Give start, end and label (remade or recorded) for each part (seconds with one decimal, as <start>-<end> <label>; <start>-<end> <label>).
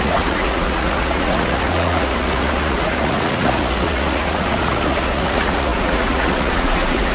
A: 0.0-7.1 remade